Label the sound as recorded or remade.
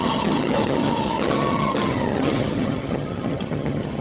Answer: remade